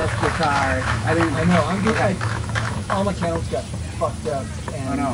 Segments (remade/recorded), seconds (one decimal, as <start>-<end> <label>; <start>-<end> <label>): 0.0-3.1 remade; 3.1-5.1 recorded